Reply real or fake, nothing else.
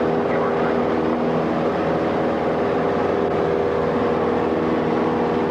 real